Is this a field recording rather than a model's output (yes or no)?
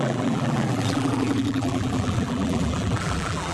no